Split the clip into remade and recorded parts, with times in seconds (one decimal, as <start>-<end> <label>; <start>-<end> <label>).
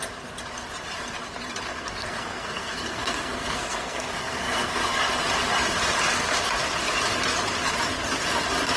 0.0-1.7 recorded; 1.7-4.8 remade; 4.8-8.8 recorded